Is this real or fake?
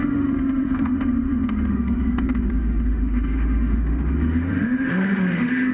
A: fake